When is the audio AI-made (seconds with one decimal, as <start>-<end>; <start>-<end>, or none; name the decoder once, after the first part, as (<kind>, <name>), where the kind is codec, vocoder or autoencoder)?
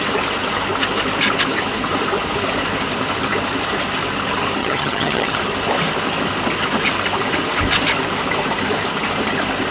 4.6-5.4 (vocoder, HiFi-GAN)